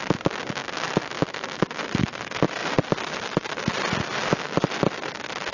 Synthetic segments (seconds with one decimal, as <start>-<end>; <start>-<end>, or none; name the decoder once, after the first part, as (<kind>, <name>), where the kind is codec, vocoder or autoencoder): none